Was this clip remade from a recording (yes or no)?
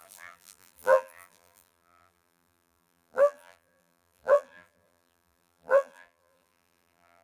yes